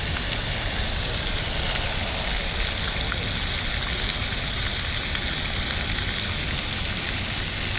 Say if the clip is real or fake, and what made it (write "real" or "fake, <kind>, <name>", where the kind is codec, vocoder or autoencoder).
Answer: real